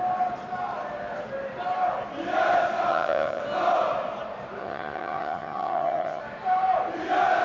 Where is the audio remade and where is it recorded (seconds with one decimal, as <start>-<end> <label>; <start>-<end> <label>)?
0.0-2.9 recorded; 2.9-3.4 remade; 3.4-4.6 recorded; 4.6-6.2 remade; 6.2-7.4 recorded